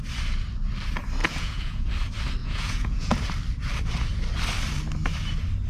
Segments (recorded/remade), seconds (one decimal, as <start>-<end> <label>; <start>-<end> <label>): 0.0-1.2 recorded; 1.2-1.9 remade; 1.9-2.4 recorded; 2.4-3.1 remade; 3.1-5.7 recorded